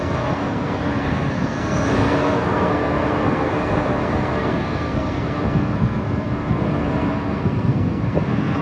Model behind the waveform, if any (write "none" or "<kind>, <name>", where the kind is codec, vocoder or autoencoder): codec, SNAC